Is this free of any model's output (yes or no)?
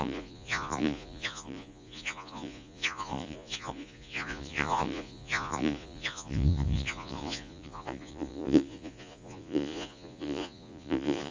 no